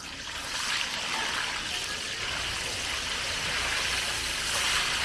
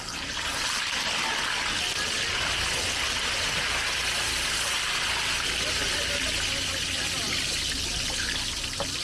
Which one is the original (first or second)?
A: second